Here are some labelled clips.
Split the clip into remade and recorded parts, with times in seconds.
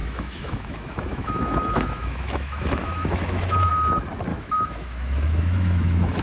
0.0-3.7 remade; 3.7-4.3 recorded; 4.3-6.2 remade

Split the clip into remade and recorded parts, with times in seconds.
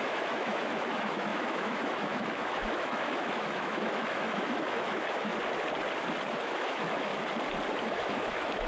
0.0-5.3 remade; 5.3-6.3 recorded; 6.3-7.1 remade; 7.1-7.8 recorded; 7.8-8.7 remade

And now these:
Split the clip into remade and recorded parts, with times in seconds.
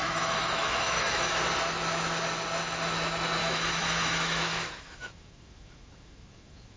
0.0-1.4 remade; 1.4-3.4 recorded; 3.4-6.8 remade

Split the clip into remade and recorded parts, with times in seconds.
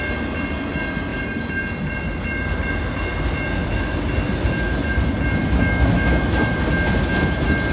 0.0-5.4 recorded; 5.4-6.6 remade; 6.6-7.7 recorded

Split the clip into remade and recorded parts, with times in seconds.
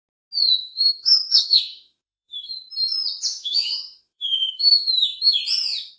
0.0-0.6 recorded; 0.6-2.6 remade; 2.6-3.3 recorded; 3.3-5.4 remade; 5.4-6.0 recorded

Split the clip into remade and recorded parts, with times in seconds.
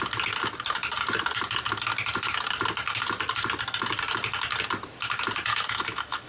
0.0-5.5 recorded; 5.5-6.3 remade